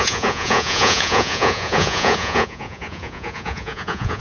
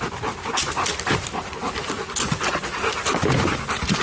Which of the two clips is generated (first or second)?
first